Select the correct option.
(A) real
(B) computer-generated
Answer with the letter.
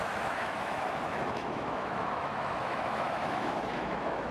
B